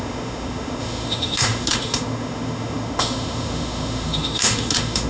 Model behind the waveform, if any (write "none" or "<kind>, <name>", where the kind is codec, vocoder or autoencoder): autoencoder, DAC-VAE